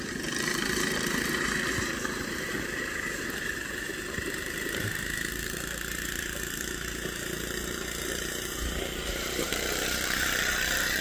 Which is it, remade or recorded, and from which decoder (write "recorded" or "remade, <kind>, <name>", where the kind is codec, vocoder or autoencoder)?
remade, vocoder, BigVGAN v2